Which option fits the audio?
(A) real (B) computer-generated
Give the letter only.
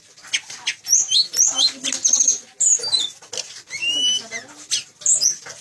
A